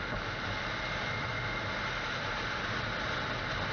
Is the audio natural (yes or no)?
yes